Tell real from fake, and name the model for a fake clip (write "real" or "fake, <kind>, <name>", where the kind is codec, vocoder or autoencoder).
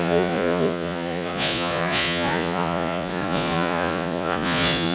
fake, vocoder, Vocos